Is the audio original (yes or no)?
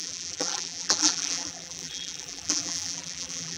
no